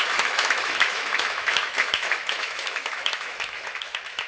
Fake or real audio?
fake